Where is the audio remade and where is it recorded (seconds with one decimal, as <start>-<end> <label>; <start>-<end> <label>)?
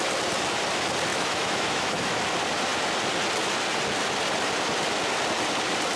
0.0-1.1 recorded; 1.1-2.2 remade; 2.2-6.0 recorded